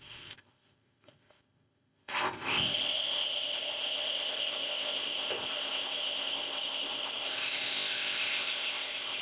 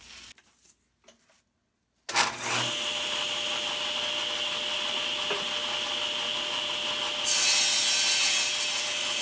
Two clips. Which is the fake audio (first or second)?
first